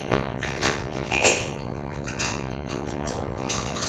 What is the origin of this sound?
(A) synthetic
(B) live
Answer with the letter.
A